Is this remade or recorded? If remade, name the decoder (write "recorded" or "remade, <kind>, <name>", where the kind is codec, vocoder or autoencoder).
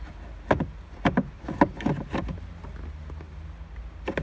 recorded